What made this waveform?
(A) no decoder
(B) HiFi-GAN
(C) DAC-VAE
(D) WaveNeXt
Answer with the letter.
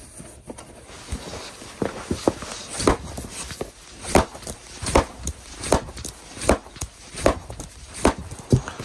A